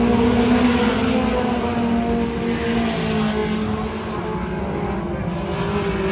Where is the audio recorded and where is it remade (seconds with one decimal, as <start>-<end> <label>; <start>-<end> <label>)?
0.0-6.1 recorded